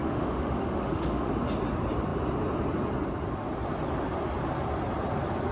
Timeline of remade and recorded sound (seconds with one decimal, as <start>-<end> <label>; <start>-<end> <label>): 0.0-1.3 remade; 1.3-5.5 recorded